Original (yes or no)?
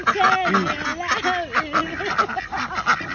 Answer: yes